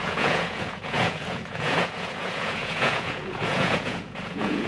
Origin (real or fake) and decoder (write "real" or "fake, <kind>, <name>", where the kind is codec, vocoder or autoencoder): fake, vocoder, Vocos